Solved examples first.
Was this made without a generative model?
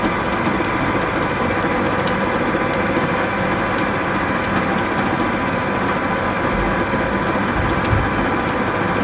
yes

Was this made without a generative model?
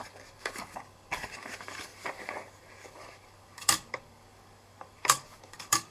no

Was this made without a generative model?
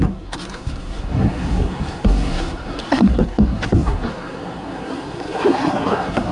no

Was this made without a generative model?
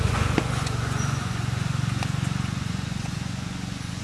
no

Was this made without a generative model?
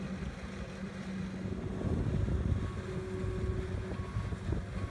yes